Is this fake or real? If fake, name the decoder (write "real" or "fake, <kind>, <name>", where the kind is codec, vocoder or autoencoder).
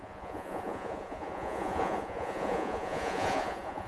fake, vocoder, Vocos